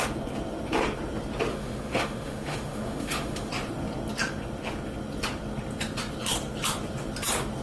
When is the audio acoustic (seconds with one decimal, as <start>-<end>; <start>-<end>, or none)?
0.0-1.5; 3.5-7.6

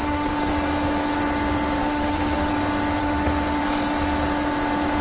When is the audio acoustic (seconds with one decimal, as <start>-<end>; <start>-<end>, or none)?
0.5-1.8; 2.5-3.0; 3.6-5.0

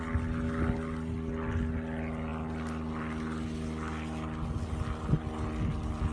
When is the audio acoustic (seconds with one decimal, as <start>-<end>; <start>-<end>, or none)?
0.0-6.1

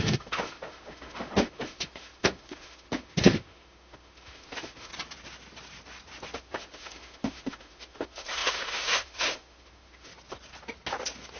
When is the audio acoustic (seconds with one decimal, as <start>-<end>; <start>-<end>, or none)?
4.9-6.4; 10.1-11.4

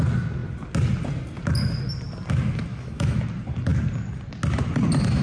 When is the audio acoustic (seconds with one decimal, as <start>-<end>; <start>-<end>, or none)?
0.0-2.7; 3.2-5.2

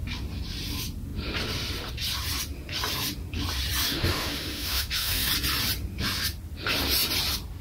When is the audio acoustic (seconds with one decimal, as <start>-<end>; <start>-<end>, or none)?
0.0-3.9; 5.3-7.6